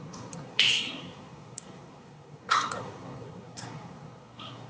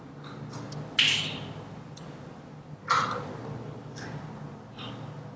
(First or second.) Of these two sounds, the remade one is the first